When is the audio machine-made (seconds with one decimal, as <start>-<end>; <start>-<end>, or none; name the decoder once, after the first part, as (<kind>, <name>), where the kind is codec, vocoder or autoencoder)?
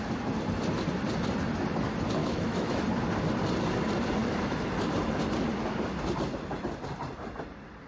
2.2-2.8 (autoencoder, DAC-VAE); 4.2-4.7